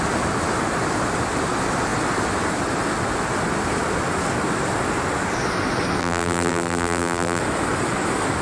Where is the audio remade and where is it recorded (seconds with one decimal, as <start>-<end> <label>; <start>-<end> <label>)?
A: 0.0-6.0 recorded; 6.0-7.4 remade; 7.4-8.4 recorded